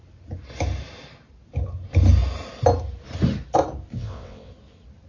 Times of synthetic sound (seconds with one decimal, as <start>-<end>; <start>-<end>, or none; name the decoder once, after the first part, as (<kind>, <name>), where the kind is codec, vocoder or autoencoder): 3.9-4.5 (vocoder, WaveNeXt)